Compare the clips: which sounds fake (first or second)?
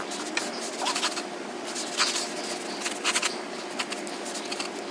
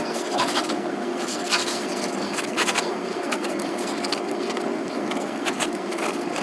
second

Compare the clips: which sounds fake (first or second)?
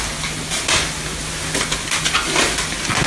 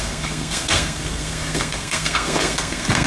second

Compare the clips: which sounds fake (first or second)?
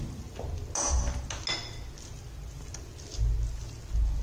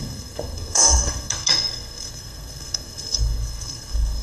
second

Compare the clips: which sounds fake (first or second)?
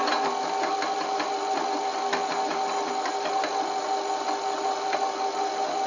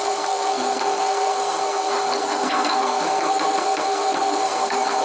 second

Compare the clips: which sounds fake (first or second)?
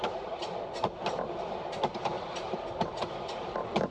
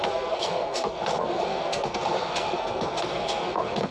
second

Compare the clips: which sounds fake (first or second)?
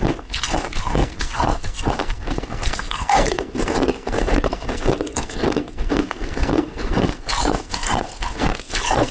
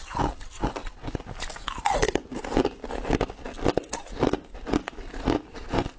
first